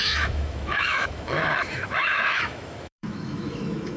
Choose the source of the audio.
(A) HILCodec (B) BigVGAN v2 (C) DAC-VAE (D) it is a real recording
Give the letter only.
C